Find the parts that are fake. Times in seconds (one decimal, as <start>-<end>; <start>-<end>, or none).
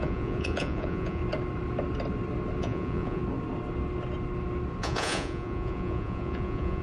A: 0.0-1.2; 2.6-3.2; 4.8-6.8